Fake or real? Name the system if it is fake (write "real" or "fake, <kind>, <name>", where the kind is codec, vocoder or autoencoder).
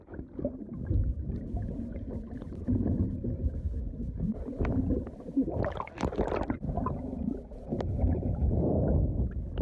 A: real